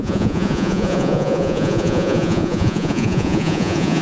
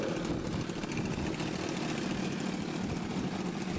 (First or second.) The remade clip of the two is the first